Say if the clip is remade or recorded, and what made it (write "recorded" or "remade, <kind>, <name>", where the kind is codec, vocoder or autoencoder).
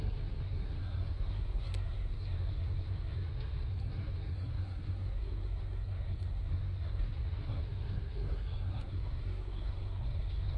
remade, codec, SNAC